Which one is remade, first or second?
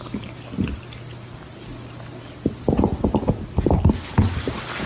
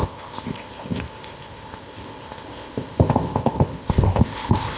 second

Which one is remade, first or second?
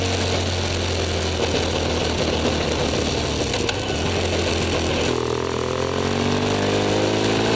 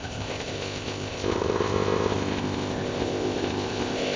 second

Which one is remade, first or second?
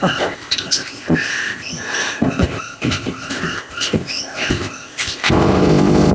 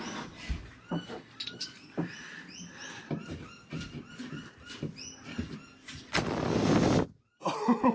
first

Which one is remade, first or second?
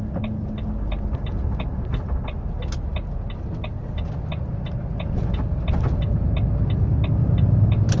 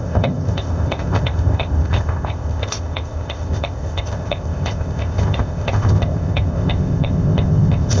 second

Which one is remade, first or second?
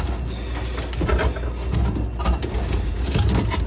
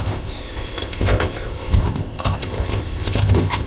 second